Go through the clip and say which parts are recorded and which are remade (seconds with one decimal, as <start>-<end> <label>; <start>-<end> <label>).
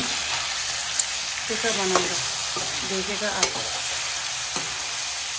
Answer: 0.0-5.4 recorded